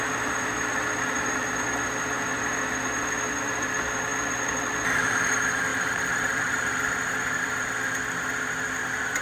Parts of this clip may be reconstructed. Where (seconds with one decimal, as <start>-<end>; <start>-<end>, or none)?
5.7-7.7